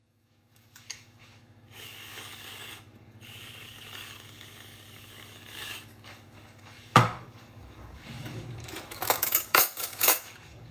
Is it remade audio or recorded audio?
remade